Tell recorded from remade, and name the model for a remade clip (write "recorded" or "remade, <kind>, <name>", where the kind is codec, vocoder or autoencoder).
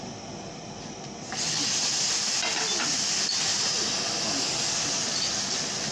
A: recorded